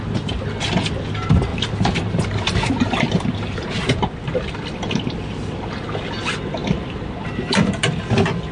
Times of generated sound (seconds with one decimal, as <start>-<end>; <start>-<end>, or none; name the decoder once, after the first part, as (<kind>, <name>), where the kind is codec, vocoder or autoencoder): 1.5-3.9 (vocoder, BigVGAN v2); 6.6-7.7

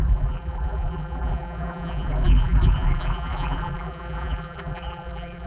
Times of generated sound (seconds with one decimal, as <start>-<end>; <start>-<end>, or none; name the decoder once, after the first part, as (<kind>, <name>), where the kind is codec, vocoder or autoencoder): 0.0-5.5 (vocoder, BigVGAN v2)

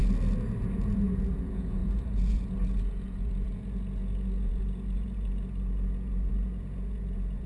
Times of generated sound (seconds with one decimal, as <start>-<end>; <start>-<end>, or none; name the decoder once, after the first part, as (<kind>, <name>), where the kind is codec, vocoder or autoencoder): 0.6-7.5 (vocoder, Vocos)

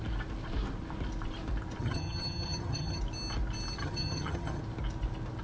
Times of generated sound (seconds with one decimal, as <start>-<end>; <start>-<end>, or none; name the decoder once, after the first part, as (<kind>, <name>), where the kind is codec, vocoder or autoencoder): 1.8-3.0 (vocoder, HiFi-GAN); 3.8-4.6

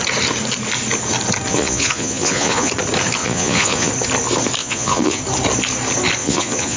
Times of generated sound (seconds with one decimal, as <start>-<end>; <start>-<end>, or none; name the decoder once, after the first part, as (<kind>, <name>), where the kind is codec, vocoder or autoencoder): 1.5-2.7 (vocoder, Vocos); 3.2-3.9; 4.6-5.2; 6.2-6.8

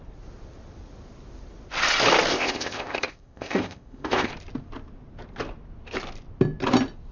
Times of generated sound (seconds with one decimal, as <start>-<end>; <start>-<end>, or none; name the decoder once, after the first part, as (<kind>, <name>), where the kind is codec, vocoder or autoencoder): 2.3-4.3 (codec, ZipCodec)